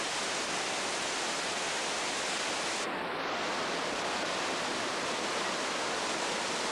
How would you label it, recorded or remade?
recorded